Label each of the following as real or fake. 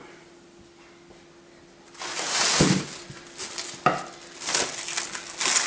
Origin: real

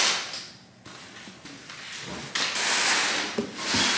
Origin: real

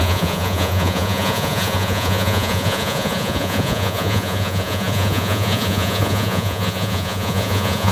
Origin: fake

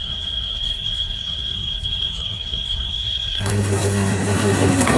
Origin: fake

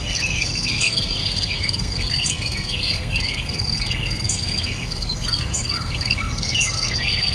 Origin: fake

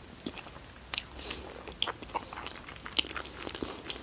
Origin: real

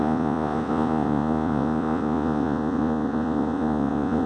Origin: fake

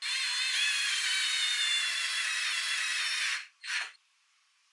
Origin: real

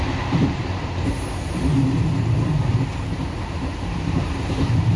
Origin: fake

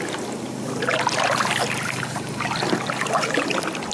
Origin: real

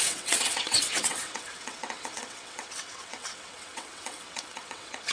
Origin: fake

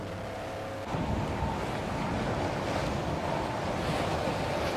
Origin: real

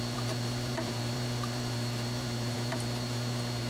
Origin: fake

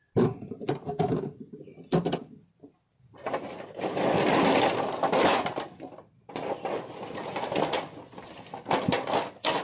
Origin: real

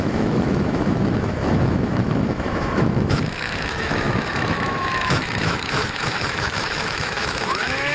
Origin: fake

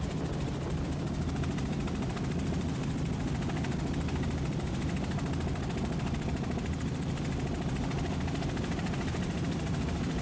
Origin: fake